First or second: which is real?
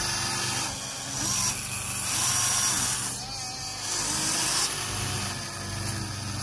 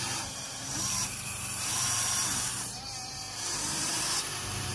first